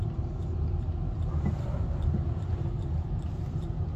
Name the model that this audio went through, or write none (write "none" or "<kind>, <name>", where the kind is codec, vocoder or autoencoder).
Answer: none